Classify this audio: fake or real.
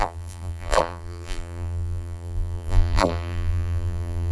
fake